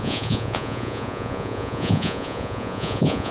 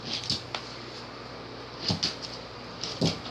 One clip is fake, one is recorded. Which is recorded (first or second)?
second